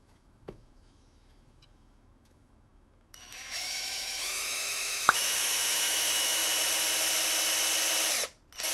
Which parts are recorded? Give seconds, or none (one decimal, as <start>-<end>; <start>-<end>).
6.4-8.7